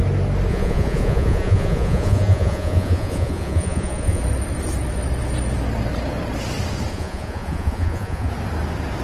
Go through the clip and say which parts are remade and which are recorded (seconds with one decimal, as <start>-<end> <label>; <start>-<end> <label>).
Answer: 0.0-0.5 recorded; 0.5-4.2 remade; 4.2-6.9 recorded; 6.9-8.3 remade; 8.3-9.0 recorded